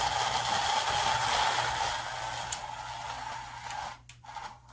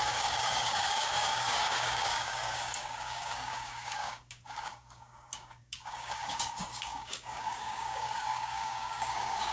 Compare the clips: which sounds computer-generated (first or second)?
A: second